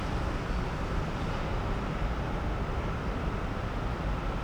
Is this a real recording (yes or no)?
yes